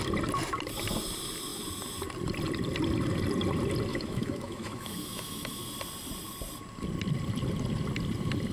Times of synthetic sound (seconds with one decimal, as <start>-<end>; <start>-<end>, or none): 3.9-5.6